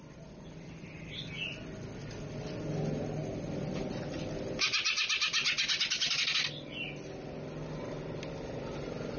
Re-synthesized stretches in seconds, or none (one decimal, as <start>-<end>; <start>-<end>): none